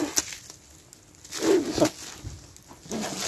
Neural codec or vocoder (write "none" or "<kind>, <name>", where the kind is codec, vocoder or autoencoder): none